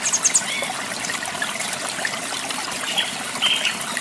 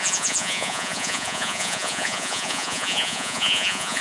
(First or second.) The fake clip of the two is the second